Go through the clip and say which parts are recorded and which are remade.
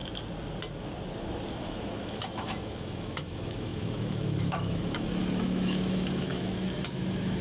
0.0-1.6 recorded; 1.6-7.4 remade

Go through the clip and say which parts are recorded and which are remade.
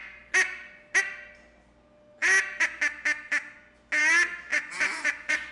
0.0-4.5 recorded; 4.5-5.5 remade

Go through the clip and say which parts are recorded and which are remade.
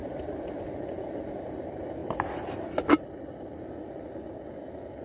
0.0-0.6 remade; 0.6-5.0 recorded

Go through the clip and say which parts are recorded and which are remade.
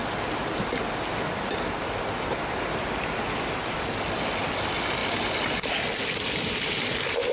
0.0-7.3 recorded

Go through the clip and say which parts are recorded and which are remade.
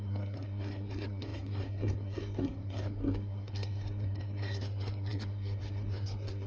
0.0-6.5 remade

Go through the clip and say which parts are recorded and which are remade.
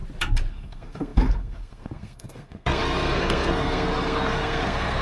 0.0-0.5 recorded; 0.5-5.0 remade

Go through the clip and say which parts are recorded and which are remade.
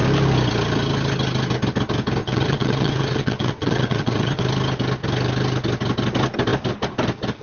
0.0-2.2 recorded; 2.2-4.4 remade; 4.4-7.4 recorded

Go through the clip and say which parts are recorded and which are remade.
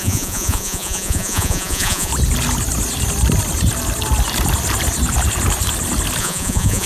0.0-2.1 remade; 2.1-6.2 recorded; 6.2-6.9 remade